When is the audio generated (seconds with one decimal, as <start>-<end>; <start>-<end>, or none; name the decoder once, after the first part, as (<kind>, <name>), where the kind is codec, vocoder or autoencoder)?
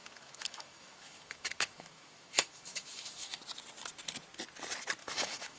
0.0-3.4 (autoencoder, DAC-VAE); 5.0-5.6